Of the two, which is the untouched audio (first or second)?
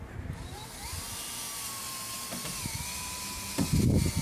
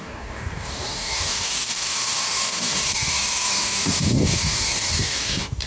first